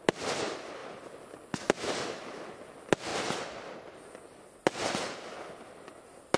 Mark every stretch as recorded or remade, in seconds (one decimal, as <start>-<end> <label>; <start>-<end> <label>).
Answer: 0.0-6.4 recorded